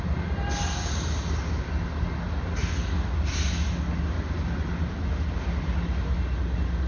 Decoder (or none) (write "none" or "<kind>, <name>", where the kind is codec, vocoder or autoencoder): none